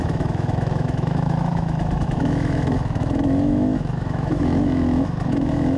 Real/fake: fake